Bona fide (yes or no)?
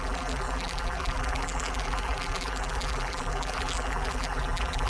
no